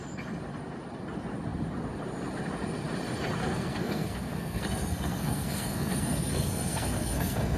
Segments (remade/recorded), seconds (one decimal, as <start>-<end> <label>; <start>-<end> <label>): 0.0-3.4 recorded; 3.4-7.6 remade

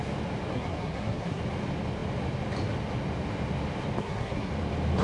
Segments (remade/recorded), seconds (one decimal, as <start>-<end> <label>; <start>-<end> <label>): 0.0-0.5 recorded; 0.5-1.4 remade; 1.4-4.0 recorded; 4.0-4.5 remade; 4.5-5.0 recorded

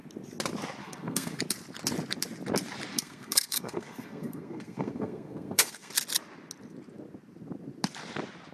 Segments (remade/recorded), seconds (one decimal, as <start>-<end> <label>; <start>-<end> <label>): 0.0-0.8 recorded; 0.8-1.4 remade; 1.4-2.9 recorded; 2.9-5.9 remade; 5.9-8.5 recorded

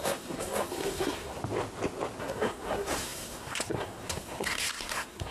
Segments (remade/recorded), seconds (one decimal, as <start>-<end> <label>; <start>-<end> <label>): 0.0-1.4 remade; 1.4-2.2 recorded; 2.2-5.3 remade